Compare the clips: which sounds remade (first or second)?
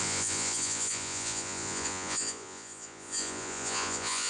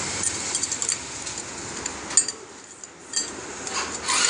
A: first